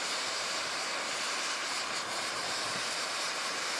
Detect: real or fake fake